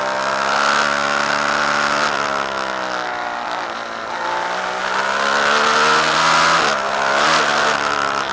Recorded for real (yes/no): yes